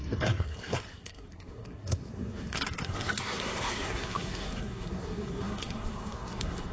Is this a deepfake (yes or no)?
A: yes